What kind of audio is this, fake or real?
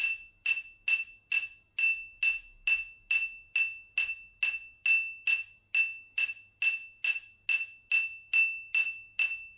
real